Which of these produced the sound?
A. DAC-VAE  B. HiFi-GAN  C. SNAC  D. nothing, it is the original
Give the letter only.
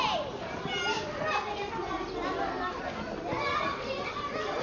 D